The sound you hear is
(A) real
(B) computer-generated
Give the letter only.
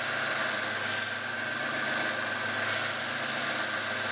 A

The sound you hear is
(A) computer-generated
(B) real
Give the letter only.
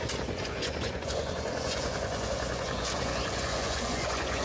A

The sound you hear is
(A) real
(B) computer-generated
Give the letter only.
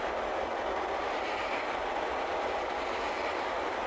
A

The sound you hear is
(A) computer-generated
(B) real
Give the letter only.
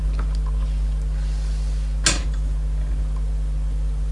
B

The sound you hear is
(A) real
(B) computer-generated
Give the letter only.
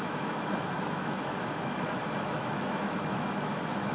B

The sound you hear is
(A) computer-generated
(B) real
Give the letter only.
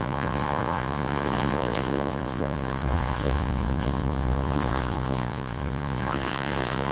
A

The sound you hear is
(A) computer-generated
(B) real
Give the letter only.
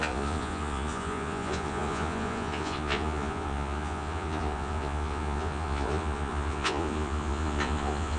A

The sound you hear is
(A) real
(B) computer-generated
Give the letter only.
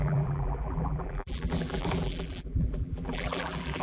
B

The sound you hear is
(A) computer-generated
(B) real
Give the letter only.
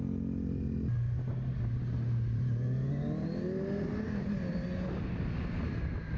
B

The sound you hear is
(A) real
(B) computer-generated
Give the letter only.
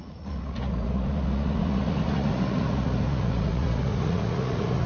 B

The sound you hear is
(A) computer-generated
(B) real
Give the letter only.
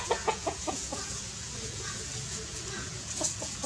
A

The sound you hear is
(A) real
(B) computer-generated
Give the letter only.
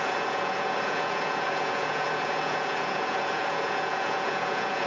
B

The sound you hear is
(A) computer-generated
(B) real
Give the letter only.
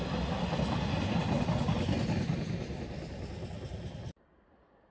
B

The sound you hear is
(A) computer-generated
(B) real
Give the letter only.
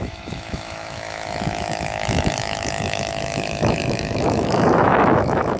A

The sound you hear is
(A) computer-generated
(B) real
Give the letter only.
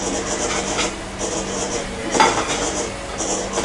B